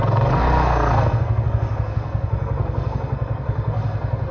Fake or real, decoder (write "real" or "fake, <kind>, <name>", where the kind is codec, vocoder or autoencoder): fake, codec, SNAC